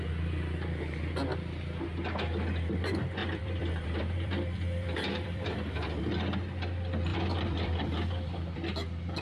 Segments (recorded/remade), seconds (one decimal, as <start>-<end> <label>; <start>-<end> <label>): 0.0-3.2 recorded; 3.2-6.0 remade; 6.0-7.1 recorded; 7.1-8.6 remade; 8.6-9.2 recorded